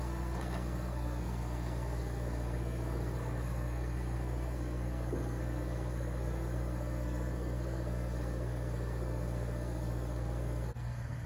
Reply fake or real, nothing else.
fake